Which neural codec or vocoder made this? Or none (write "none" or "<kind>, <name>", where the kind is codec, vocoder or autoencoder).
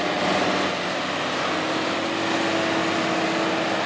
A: none